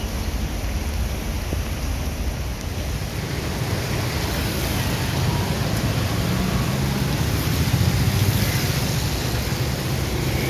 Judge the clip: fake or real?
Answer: real